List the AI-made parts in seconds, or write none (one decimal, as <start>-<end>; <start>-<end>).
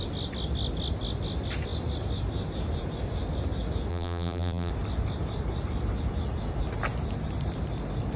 3.9-4.7